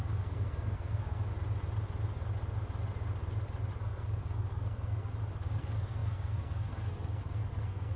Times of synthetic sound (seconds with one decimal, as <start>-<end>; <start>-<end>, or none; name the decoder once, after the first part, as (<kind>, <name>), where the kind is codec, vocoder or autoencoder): 0.0-1.3 (codec, SNAC); 3.8-5.1; 5.6-8.0